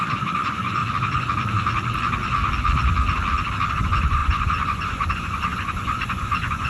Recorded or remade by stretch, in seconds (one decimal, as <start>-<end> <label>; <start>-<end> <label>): 0.0-0.8 remade; 0.8-3.7 recorded; 3.7-6.7 remade